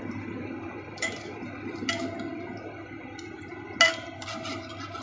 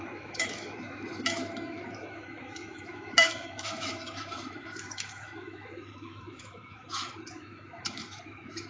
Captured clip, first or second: first